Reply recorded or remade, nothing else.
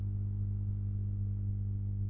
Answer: recorded